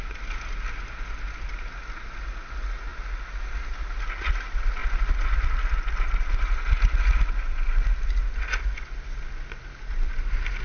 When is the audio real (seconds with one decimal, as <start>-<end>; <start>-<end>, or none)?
0.0-10.6